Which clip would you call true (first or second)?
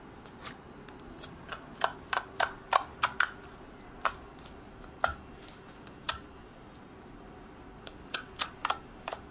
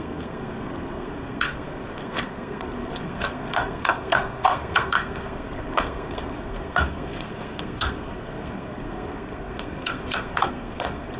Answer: first